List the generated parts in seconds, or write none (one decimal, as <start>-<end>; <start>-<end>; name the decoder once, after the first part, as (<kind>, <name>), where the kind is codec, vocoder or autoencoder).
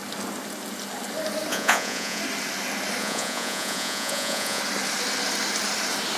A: 1.5-2.2 (vocoder, Vocos); 3.0-4.6